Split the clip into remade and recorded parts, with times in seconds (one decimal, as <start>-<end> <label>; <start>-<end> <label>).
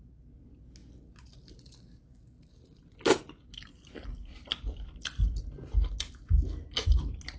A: 0.0-7.4 recorded